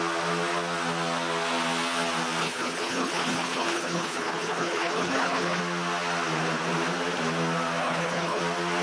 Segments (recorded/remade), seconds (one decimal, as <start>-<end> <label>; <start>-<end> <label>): 0.0-2.4 recorded; 2.4-5.6 remade; 5.6-7.8 recorded; 7.8-8.4 remade; 8.4-8.8 recorded